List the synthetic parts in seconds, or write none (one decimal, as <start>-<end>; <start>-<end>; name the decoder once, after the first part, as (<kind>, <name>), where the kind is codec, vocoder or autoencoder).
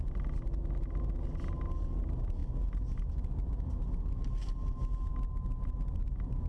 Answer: none